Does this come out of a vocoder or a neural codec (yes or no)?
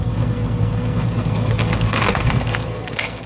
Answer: yes